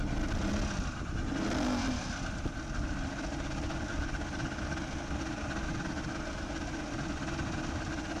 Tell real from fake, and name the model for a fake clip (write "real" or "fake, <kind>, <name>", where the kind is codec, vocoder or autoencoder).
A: real